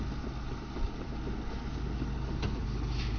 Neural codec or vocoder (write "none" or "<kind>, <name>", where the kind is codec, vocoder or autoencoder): none